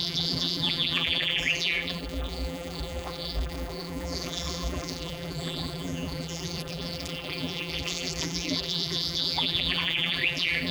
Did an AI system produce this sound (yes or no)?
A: yes